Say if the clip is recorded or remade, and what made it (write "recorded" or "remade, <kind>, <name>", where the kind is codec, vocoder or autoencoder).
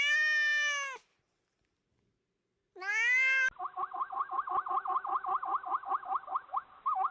recorded